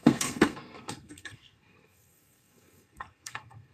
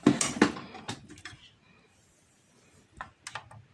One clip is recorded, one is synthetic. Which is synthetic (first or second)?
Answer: first